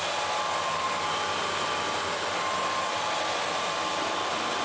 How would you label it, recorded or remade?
recorded